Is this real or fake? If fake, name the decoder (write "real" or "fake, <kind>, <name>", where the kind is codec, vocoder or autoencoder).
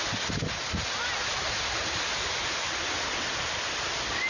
real